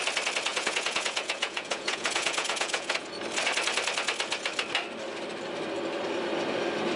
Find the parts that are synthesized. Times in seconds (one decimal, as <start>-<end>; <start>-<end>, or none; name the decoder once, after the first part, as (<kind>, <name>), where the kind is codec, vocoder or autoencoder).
0.5-3.1 (vocoder, Vocos)

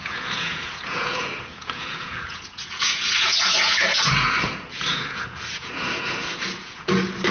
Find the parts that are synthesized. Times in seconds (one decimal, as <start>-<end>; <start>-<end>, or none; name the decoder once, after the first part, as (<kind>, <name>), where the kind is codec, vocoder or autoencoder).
0.0-7.3 (vocoder, Vocos)